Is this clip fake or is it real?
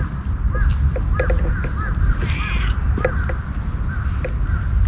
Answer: real